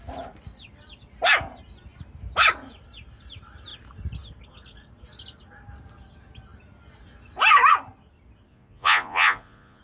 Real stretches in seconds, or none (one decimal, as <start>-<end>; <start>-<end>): 0.0-8.5